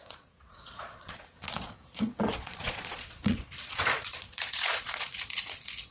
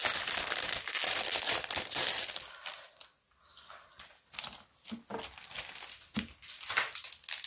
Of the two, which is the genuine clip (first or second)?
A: second